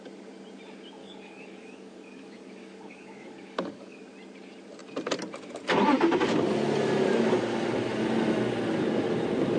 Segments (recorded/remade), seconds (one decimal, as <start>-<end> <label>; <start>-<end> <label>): 0.0-1.0 recorded; 1.0-4.0 remade; 4.0-9.6 recorded